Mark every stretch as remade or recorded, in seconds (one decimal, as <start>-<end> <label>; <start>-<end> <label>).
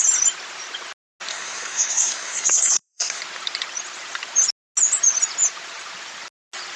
0.0-1.3 recorded; 1.3-3.2 remade; 3.2-6.8 recorded